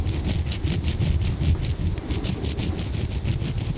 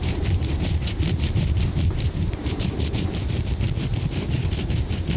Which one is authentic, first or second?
first